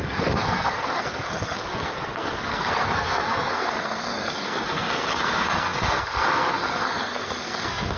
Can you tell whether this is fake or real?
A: fake